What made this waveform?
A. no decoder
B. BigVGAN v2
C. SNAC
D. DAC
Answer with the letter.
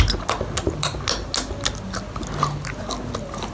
A